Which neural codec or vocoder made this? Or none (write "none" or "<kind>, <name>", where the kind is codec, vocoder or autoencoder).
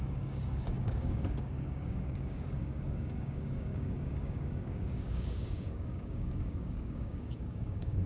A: codec, DAC